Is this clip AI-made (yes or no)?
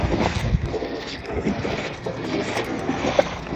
yes